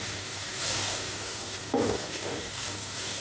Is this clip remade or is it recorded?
remade